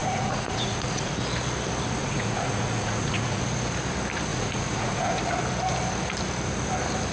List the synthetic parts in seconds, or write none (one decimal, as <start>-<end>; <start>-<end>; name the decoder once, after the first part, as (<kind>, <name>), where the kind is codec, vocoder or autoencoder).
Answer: 0.0-1.1 (vocoder, Vocos); 2.0-3.4; 4.3-5.2